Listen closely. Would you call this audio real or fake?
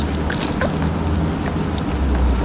real